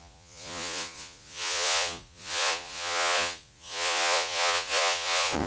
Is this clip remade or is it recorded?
remade